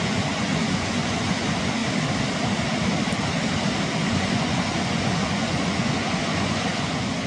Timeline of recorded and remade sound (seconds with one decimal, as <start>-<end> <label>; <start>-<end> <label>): 0.0-1.8 remade; 1.8-3.9 recorded; 3.9-7.3 remade